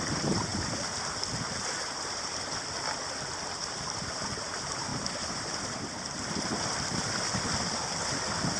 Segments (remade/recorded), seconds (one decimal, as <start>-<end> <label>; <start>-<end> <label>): 0.0-4.9 remade; 4.9-5.8 recorded; 5.8-8.6 remade

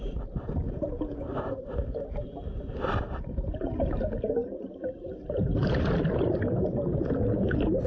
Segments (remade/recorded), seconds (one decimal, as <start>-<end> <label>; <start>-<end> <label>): 0.0-5.2 remade; 5.2-7.4 recorded; 7.4-7.9 remade

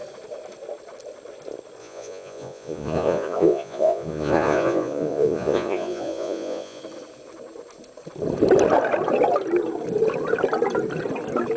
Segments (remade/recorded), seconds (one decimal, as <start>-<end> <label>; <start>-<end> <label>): 0.0-1.8 recorded; 1.8-6.8 remade; 6.8-11.6 recorded

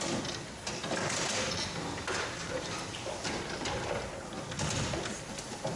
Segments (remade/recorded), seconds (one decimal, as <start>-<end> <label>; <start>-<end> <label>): 0.0-5.8 recorded

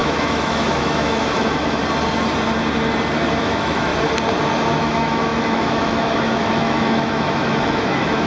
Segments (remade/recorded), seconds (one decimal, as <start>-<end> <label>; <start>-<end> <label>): 0.0-1.8 remade; 1.8-3.4 recorded; 3.4-3.9 remade; 3.9-4.8 recorded; 4.8-8.3 remade

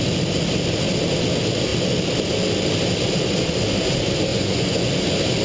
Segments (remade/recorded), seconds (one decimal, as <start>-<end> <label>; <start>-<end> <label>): 0.0-4.3 recorded; 4.3-4.9 remade; 4.9-5.4 recorded

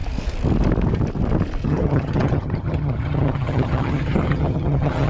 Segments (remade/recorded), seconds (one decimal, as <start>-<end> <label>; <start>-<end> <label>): 0.0-1.6 recorded; 1.6-5.1 remade